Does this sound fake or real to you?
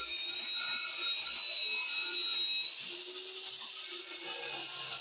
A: real